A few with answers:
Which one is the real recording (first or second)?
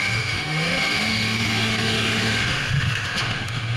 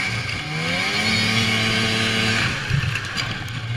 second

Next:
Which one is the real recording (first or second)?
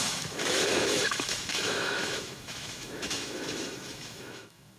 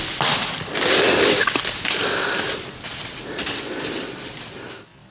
second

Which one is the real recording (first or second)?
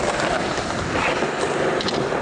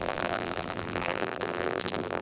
first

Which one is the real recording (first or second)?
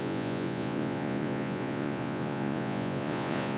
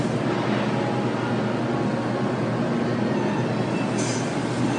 second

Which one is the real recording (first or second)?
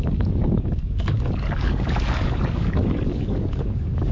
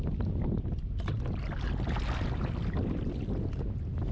second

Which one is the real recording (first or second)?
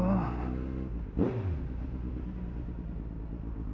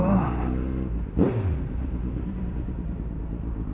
first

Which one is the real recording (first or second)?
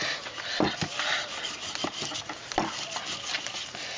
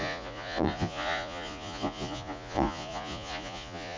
first